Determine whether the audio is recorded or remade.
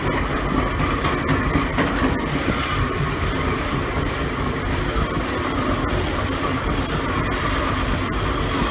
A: remade